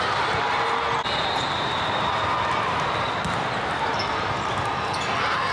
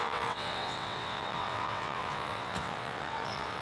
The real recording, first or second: first